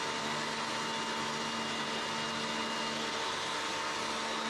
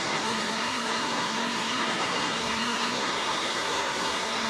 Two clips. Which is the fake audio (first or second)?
second